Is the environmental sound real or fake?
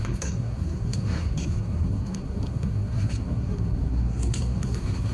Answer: fake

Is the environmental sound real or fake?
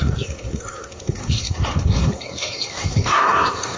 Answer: fake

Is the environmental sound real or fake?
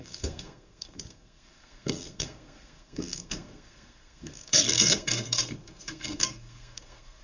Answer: fake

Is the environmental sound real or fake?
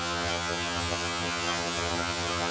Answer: fake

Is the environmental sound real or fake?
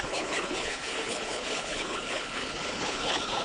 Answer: fake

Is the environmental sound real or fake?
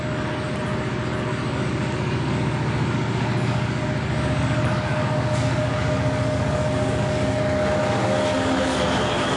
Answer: fake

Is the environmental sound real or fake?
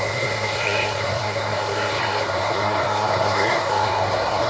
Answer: fake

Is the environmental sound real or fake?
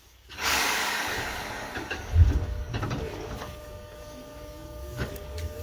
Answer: fake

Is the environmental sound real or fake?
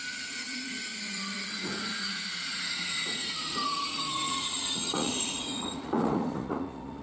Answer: fake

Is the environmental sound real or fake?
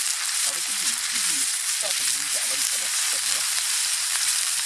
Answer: fake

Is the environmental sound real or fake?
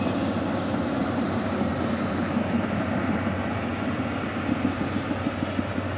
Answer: real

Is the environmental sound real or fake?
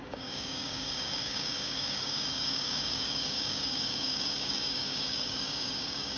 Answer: fake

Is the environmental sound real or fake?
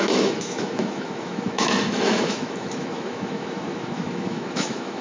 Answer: fake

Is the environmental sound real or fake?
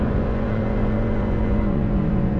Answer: fake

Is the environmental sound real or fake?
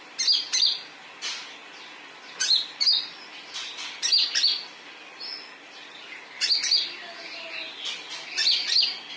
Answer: real